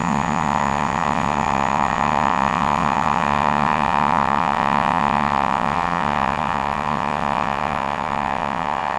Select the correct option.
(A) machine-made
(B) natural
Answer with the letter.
A